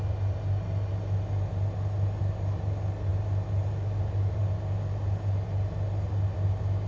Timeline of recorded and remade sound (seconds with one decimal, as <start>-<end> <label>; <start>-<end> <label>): 0.0-6.9 recorded

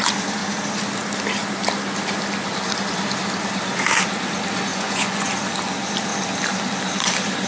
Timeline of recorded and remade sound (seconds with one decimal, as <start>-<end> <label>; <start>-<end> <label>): 0.0-4.7 recorded; 4.7-5.3 remade; 5.3-7.5 recorded

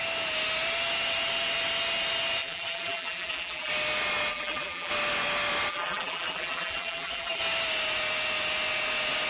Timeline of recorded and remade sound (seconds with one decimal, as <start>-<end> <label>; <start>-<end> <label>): 0.0-2.4 recorded; 2.4-3.7 remade; 3.7-4.3 recorded; 4.3-4.9 remade; 4.9-5.7 recorded; 5.7-7.4 remade; 7.4-9.3 recorded

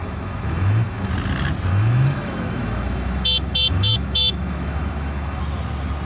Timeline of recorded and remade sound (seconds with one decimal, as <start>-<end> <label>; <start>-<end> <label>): 0.0-1.1 remade; 1.1-1.7 recorded; 1.7-5.4 remade; 5.4-6.1 recorded

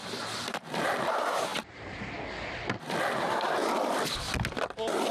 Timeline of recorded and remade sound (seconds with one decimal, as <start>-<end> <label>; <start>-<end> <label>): 0.0-1.1 remade; 1.1-5.1 recorded

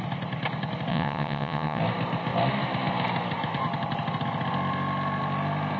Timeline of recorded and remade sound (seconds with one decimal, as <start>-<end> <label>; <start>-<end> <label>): 0.0-0.9 recorded; 0.9-1.8 remade; 1.8-5.8 recorded

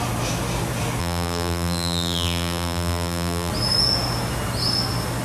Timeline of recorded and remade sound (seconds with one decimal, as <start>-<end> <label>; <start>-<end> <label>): 0.0-1.0 recorded; 1.0-3.5 remade; 3.5-5.2 recorded

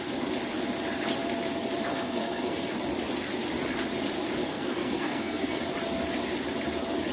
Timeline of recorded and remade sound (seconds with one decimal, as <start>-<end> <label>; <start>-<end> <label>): 0.0-1.9 recorded; 1.9-2.7 remade; 2.7-4.4 recorded; 4.4-5.6 remade; 5.6-7.1 recorded